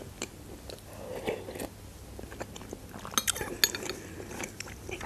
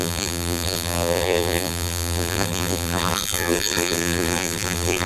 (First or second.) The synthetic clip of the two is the second